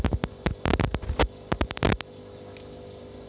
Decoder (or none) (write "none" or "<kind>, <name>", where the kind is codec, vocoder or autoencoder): none